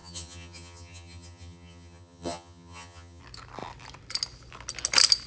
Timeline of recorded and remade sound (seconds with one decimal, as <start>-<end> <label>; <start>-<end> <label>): 0.0-3.2 remade; 3.2-5.3 recorded